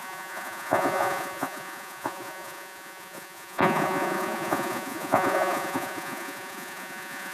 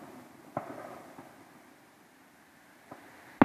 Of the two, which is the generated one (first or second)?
first